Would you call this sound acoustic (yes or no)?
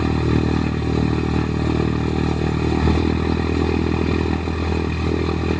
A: yes